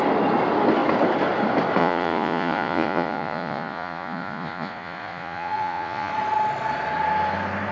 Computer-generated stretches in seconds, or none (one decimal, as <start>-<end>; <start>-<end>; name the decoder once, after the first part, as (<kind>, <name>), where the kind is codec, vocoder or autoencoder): 1.8-6.1 (vocoder, Vocos)

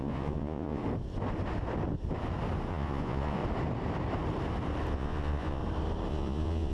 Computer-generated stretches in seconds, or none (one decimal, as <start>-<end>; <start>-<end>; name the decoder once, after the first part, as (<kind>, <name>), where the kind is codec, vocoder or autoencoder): 0.0-0.8 (vocoder, Vocos); 2.7-3.4; 4.9-5.6; 6.1-6.7